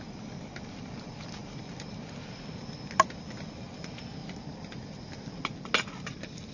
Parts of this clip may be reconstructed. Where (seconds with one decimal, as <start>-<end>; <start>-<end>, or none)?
none